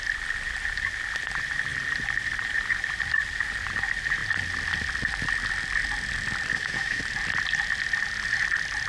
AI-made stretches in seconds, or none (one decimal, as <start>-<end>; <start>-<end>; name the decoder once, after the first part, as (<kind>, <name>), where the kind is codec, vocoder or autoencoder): 6.5-7.0 (autoencoder, DAC-VAE)